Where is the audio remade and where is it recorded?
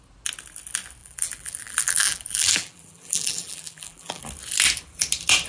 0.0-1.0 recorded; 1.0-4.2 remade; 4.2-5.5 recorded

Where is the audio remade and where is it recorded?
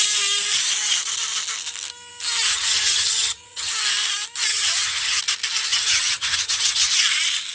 0.0-2.5 recorded; 2.5-3.7 remade; 3.7-4.5 recorded; 4.5-5.2 remade; 5.2-5.7 recorded; 5.7-6.9 remade; 6.9-7.5 recorded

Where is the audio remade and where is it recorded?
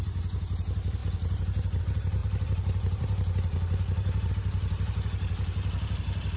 0.0-6.4 remade